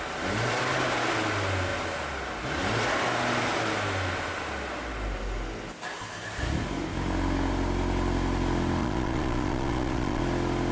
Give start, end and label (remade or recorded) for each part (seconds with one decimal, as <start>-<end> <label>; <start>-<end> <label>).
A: 0.0-8.8 recorded; 8.8-10.2 remade; 10.2-10.7 recorded